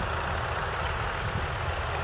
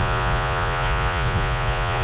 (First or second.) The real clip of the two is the first